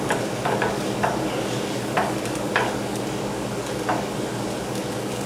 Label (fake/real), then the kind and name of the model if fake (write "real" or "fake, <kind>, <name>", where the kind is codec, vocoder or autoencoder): fake, codec, DAC